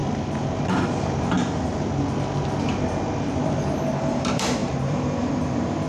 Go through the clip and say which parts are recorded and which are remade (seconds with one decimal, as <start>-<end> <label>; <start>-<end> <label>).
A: 0.0-0.8 recorded; 0.8-1.7 remade; 1.7-3.9 recorded; 3.9-5.9 remade